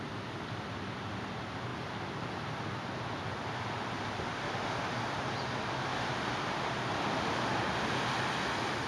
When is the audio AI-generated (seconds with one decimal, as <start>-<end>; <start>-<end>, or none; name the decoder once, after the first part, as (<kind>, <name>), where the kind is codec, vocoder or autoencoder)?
5.9-6.8 (vocoder, BigVGAN v2)